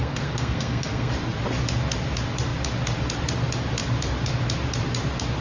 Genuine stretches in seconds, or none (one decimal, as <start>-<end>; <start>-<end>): 1.1-5.4